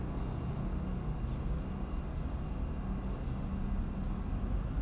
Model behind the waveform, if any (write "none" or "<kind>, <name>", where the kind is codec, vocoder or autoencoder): none